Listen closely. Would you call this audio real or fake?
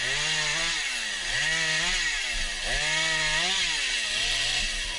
real